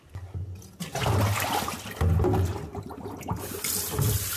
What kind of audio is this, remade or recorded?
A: recorded